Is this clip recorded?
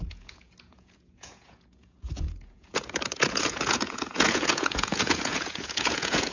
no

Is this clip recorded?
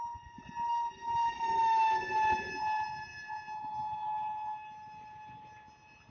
yes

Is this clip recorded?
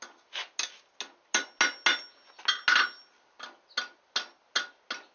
yes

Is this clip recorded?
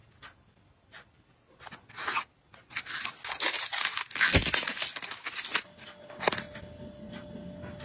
yes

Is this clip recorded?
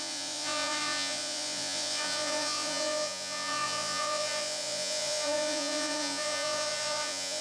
no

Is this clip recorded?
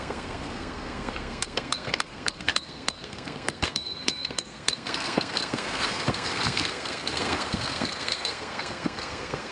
no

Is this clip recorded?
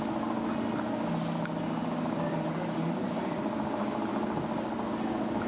yes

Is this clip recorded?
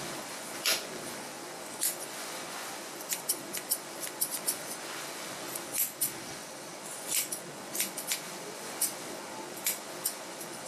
no